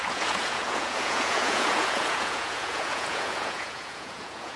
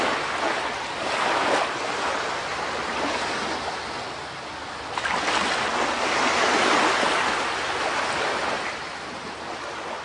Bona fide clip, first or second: second